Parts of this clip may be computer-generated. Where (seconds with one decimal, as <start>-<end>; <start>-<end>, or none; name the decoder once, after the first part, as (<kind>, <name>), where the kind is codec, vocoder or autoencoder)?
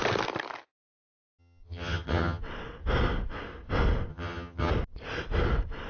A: 1.4-2.4 (vocoder, HiFi-GAN); 4.1-4.7